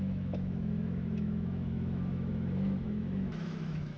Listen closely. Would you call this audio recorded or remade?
remade